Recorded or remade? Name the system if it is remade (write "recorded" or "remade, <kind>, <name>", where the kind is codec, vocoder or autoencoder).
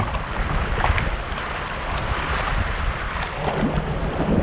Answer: recorded